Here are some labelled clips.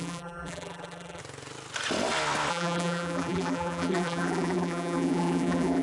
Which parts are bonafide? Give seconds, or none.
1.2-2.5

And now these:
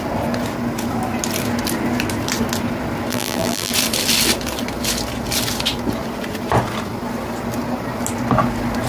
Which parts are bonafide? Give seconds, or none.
0.0-3.1; 3.7-8.9

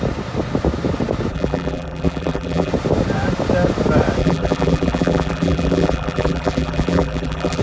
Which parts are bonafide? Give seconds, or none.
0.0-1.3; 2.7-4.2

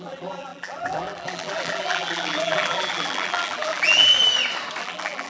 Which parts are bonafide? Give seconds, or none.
4.1-4.8

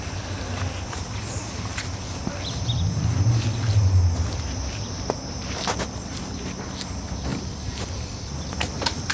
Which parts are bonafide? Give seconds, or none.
0.0-1.7; 2.3-7.3; 8.2-9.1

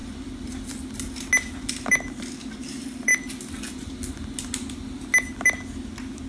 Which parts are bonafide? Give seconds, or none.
0.0-6.3